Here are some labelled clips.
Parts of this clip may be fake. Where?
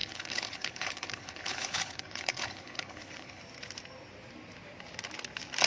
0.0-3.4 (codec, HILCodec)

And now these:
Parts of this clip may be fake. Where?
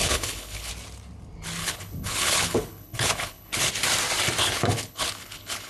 0.0-0.7 (codec, HILCodec); 1.6-3.7; 4.4-5.7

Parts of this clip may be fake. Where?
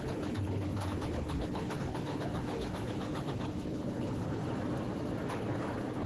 0.0-4.4 (codec, HILCodec); 5.3-6.1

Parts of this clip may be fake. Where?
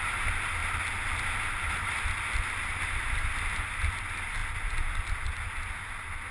none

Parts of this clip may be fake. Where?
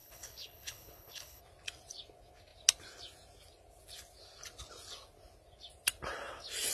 0.0-1.4 (codec, HILCodec)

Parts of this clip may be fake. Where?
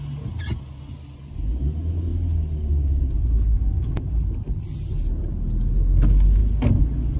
none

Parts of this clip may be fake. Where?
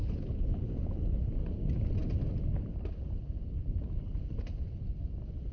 0.0-1.3 (codec, HILCodec)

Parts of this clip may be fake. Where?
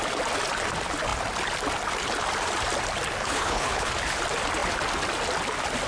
3.2-3.9 (codec, HILCodec)